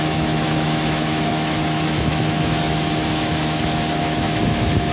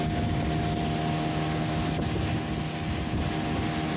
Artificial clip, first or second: first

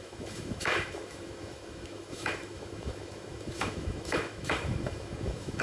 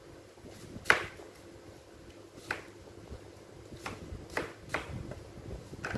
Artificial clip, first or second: first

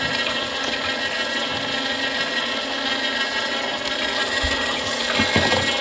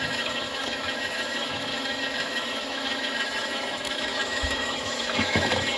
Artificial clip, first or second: second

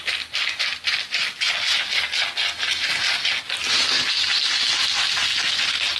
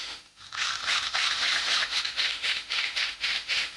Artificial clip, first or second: second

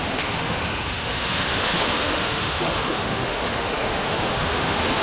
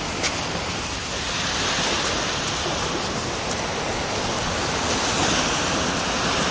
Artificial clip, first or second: first